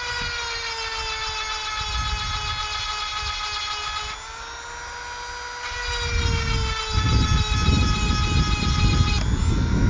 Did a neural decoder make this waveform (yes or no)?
no